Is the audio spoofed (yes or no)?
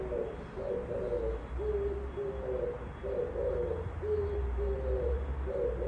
no